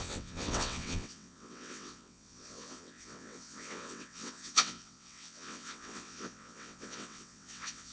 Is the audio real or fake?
fake